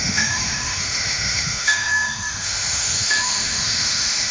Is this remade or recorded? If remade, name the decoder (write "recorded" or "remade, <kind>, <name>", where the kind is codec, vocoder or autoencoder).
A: remade, autoencoder, DAC-VAE